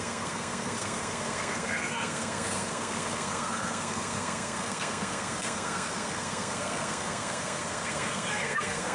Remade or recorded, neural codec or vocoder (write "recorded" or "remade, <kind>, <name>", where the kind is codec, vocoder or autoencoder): remade, codec, SNAC